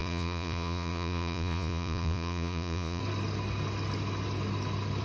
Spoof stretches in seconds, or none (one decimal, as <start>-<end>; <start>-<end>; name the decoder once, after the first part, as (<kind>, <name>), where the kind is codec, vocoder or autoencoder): 0.0-3.0 (vocoder, Vocos)